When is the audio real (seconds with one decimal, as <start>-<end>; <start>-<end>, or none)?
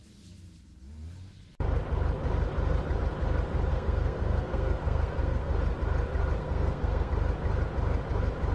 0.0-3.7; 5.5-6.4; 7.1-8.5